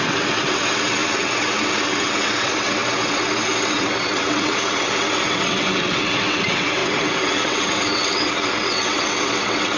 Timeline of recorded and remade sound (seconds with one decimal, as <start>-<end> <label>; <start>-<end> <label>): 0.0-9.8 remade